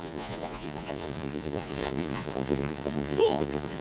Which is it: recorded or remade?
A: remade